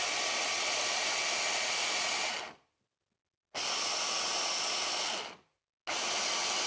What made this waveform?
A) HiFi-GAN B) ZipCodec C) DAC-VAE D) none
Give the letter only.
D